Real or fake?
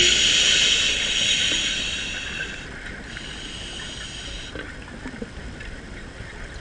real